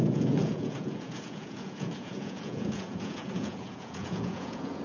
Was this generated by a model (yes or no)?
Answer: yes